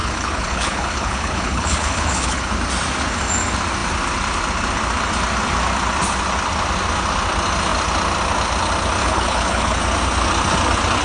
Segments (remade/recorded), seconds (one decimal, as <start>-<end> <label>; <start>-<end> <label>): 0.0-2.6 remade; 2.6-9.0 recorded; 9.0-9.8 remade; 9.8-11.0 recorded